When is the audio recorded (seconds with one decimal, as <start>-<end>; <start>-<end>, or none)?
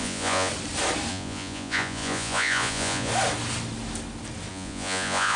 0.5-1.1; 3.1-4.5